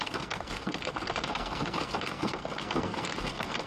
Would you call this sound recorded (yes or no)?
no